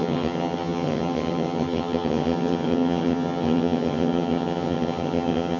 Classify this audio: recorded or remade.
remade